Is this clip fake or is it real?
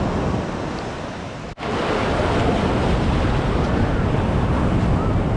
real